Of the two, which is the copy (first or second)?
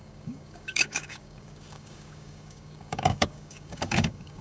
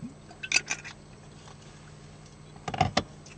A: first